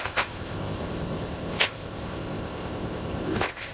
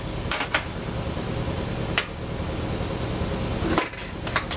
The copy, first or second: first